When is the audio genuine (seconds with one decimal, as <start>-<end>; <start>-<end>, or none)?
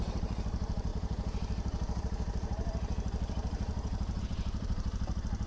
none